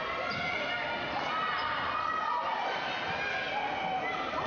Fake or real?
real